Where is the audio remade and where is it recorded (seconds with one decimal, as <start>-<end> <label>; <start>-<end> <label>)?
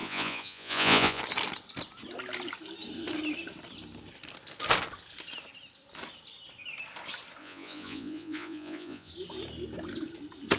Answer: 0.0-1.2 remade; 1.2-7.4 recorded; 7.4-9.1 remade; 9.1-10.6 recorded